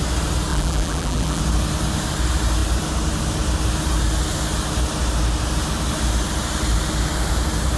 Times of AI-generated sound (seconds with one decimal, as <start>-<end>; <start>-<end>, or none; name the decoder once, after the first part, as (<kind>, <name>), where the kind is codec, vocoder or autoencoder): 0.5-1.4 (vocoder, BigVGAN v2)